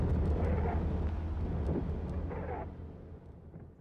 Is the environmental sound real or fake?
real